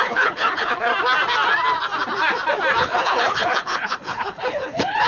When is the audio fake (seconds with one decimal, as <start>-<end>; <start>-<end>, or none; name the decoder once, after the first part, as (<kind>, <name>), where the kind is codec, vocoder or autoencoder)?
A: 0.0-0.9 (codec, HILCodec); 2.8-5.1